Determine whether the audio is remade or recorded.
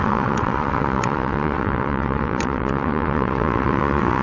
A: remade